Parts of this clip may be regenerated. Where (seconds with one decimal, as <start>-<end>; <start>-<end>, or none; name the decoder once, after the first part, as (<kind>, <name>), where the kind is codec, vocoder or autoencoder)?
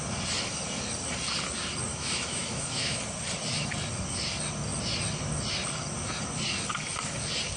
1.9-3.0 (autoencoder, DAC-VAE)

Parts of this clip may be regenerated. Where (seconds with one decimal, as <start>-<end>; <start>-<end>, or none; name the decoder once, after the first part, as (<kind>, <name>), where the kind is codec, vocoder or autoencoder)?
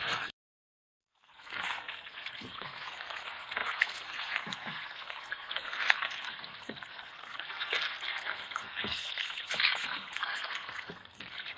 0.0-11.6 (codec, SNAC)